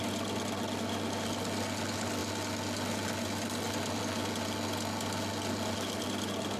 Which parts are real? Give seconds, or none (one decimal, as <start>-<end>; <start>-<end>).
0.0-6.6